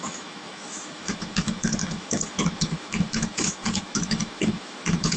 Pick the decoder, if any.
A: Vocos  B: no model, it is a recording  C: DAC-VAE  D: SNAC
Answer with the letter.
C